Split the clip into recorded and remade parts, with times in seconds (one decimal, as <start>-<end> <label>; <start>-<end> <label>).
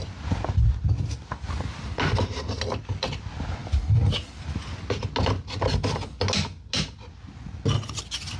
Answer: 0.0-8.4 recorded